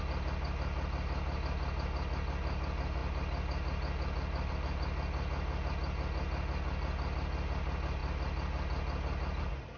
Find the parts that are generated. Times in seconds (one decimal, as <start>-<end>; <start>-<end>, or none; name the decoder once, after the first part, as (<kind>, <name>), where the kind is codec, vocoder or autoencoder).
none